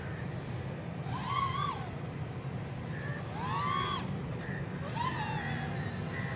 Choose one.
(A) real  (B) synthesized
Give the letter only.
A